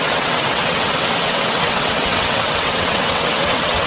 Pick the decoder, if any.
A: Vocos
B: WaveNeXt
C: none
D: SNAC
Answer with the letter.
B